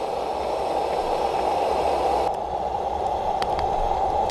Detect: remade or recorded recorded